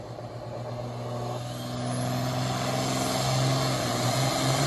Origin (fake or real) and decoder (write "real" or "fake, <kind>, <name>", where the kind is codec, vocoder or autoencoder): real